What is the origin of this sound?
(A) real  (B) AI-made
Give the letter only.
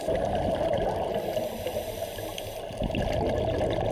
A